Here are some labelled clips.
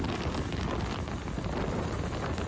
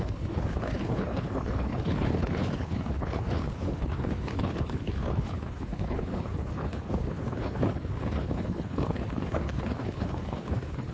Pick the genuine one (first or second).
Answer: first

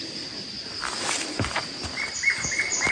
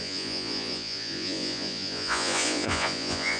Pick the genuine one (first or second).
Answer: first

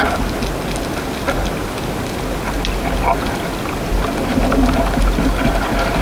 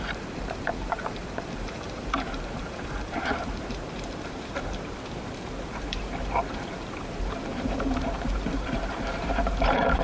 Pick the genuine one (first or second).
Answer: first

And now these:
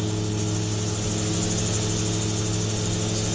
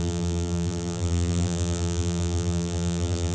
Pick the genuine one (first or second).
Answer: first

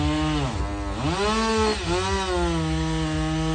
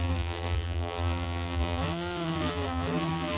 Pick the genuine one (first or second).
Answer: first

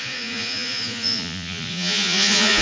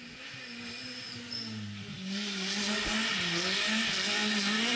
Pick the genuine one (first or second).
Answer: second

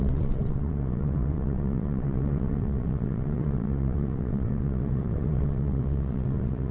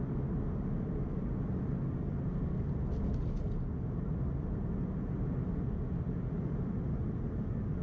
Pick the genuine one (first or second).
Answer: second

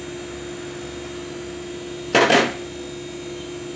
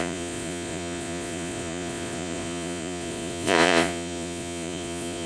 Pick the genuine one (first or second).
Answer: first